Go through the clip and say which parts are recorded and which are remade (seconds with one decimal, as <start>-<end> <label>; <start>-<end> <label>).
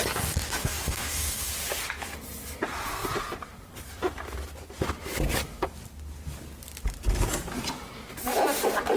0.0-0.6 recorded; 0.6-1.5 remade; 1.5-9.0 recorded